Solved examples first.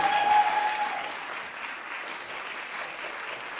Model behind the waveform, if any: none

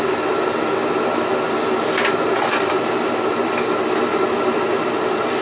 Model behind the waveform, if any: none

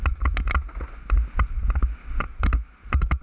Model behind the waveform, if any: none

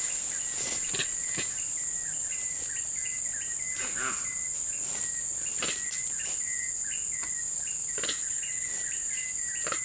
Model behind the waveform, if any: none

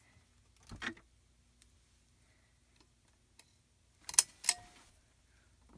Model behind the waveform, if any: none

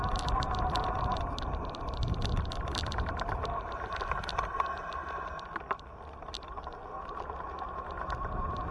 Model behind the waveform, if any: none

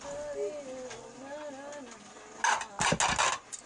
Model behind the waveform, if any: none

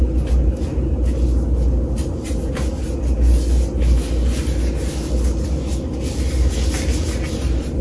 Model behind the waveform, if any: none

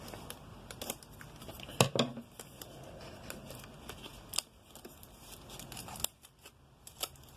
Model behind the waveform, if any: none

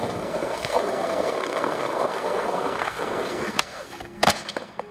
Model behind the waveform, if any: codec, SNAC